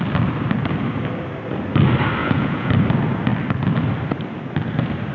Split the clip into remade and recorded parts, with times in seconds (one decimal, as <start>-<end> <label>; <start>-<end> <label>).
0.0-2.2 recorded; 2.2-2.7 remade; 2.7-5.1 recorded